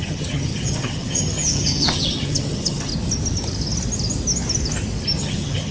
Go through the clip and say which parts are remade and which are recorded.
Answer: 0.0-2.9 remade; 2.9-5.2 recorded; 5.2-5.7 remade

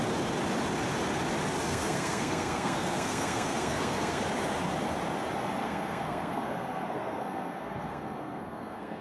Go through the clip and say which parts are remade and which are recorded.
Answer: 0.0-1.7 recorded; 1.7-4.2 remade; 4.2-5.6 recorded; 5.6-9.0 remade

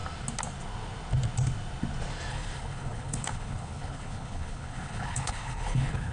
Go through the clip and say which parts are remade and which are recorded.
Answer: 0.0-2.3 recorded; 2.3-6.1 remade

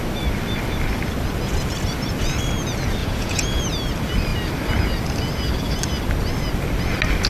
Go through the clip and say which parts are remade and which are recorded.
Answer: 0.0-3.0 recorded; 3.0-3.6 remade; 3.6-7.3 recorded

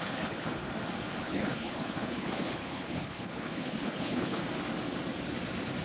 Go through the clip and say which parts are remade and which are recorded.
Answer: 0.0-0.6 remade; 0.6-1.2 recorded; 1.2-4.4 remade; 4.4-5.8 recorded

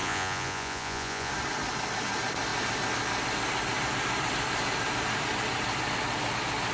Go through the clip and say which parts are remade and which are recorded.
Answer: 0.0-1.3 remade; 1.3-6.7 recorded

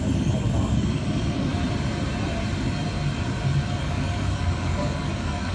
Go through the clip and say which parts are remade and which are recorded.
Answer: 0.0-1.5 remade; 1.5-3.8 recorded; 3.8-5.5 remade